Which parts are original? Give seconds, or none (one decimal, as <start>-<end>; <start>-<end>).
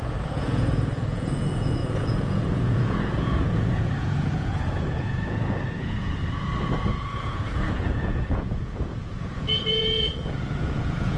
6.2-6.9